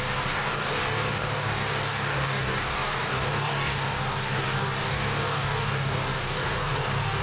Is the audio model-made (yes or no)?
yes